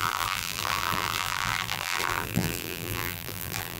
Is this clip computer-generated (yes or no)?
yes